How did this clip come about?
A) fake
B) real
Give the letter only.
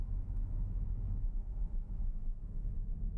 A